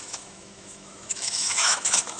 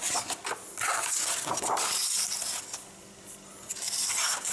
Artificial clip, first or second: first